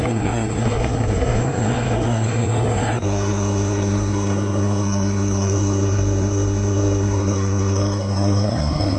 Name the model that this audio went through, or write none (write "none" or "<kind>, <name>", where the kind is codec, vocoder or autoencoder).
codec, SNAC